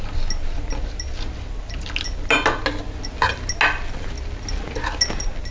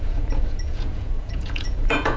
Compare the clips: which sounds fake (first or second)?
second